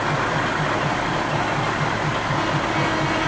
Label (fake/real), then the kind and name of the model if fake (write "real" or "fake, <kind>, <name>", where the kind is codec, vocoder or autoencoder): real